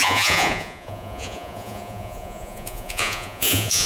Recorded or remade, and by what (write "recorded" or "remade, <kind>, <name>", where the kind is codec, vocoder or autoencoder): remade, vocoder, Vocos